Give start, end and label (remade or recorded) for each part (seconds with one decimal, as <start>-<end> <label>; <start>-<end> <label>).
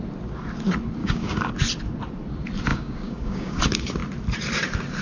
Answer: 0.0-1.0 recorded; 1.0-1.5 remade; 1.5-2.7 recorded; 2.7-3.6 remade; 3.6-5.0 recorded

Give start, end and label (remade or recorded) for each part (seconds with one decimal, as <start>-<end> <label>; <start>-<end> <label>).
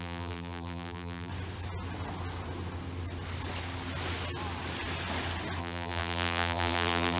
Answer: 0.0-1.3 remade; 1.3-5.6 recorded; 5.6-7.2 remade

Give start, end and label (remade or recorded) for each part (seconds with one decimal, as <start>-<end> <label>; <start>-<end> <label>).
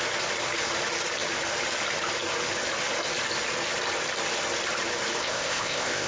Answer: 0.0-5.2 recorded; 5.2-6.1 remade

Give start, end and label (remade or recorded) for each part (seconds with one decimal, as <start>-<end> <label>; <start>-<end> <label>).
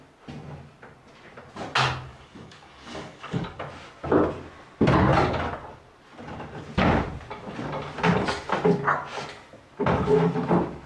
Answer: 0.0-2.1 recorded; 2.1-3.7 remade; 3.7-10.9 recorded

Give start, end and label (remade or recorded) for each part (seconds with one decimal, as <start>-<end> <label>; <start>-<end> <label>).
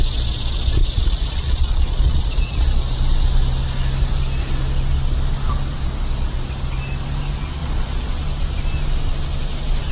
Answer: 0.0-0.8 recorded; 0.8-2.6 remade; 2.6-7.6 recorded; 7.6-8.1 remade; 8.1-9.9 recorded